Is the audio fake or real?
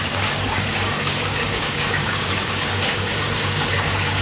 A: fake